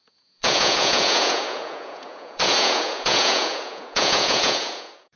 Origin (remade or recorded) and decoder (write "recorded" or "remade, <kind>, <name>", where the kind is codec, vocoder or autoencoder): remade, vocoder, Vocos